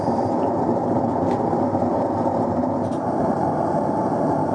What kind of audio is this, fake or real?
fake